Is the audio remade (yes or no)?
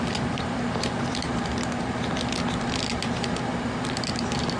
no